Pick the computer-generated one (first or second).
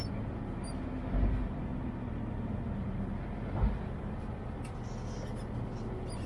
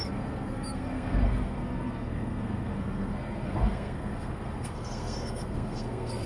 second